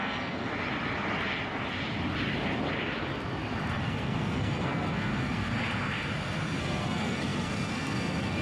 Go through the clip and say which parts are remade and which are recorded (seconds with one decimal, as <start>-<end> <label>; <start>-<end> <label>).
0.0-0.5 remade; 0.5-3.7 recorded; 3.7-5.5 remade; 5.5-6.6 recorded; 6.6-8.4 remade